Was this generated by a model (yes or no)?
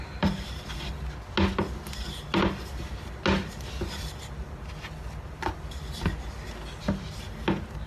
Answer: no